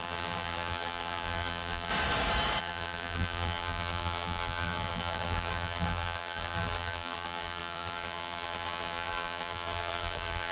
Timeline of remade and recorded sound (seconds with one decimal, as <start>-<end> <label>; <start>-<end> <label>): 0.0-1.9 remade; 1.9-2.6 recorded; 2.6-10.5 remade